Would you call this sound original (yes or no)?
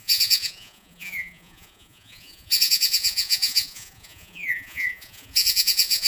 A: no